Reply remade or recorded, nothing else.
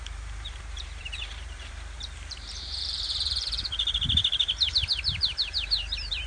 remade